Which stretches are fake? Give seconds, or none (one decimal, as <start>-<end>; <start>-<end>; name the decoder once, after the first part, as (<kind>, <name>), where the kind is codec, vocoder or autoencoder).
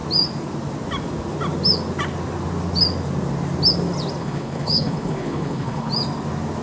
4.2-5.9 (codec, HILCodec)